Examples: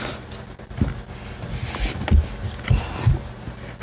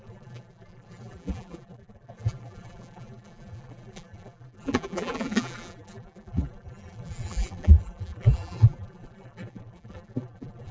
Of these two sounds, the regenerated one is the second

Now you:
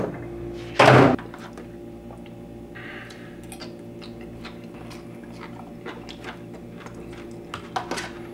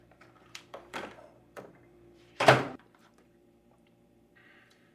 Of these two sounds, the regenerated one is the second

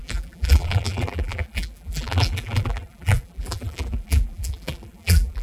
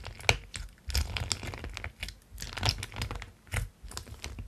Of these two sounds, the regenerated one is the first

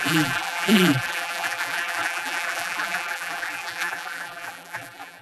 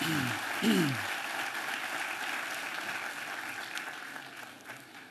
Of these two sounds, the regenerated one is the first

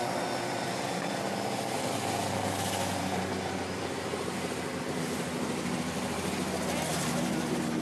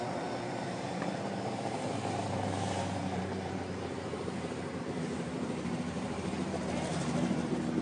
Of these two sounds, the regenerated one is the second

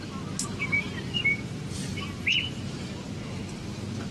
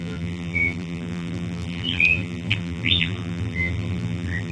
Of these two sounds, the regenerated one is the second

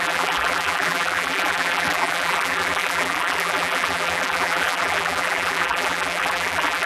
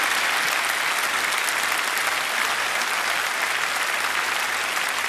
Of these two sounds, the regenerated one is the first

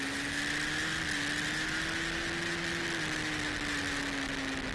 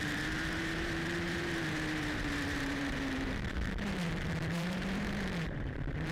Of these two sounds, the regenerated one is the second